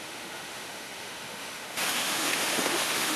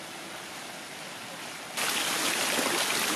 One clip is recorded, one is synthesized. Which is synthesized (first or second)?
first